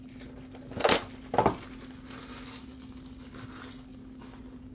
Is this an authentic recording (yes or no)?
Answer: yes